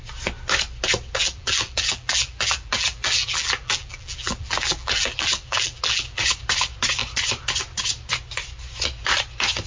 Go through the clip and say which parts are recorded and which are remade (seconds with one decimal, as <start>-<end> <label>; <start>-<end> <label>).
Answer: 0.0-1.2 recorded; 1.2-6.2 remade; 6.2-9.7 recorded